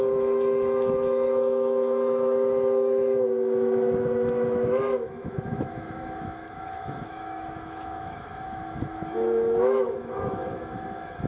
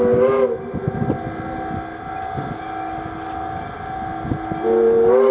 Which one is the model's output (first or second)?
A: first